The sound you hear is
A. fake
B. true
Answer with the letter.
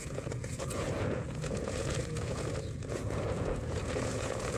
A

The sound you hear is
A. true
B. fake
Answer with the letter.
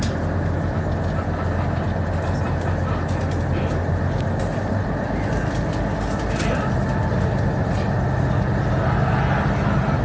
A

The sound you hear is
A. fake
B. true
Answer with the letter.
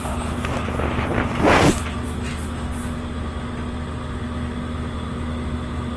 B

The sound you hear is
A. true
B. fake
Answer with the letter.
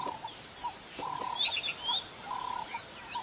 A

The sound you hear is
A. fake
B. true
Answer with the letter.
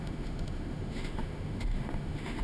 A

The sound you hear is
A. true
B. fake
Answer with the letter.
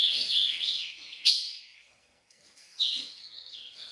B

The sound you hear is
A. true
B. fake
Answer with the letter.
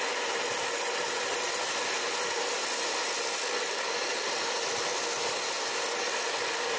A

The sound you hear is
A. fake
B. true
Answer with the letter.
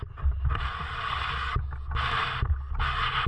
B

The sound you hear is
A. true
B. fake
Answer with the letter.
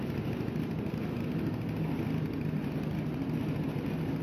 A